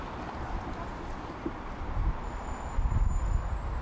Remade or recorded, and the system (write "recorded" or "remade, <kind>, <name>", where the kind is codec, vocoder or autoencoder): recorded